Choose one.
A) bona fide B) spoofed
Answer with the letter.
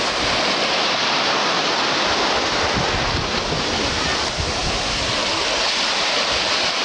A